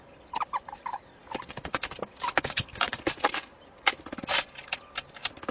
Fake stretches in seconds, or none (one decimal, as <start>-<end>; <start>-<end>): none